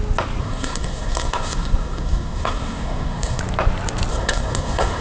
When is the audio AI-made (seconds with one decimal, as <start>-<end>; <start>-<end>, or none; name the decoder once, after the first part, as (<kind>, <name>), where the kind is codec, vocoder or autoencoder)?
0.4-3.4 (codec, SNAC); 4.1-5.0